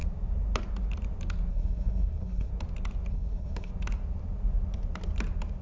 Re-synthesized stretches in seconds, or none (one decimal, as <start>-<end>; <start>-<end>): 1.5-2.5; 3.1-3.7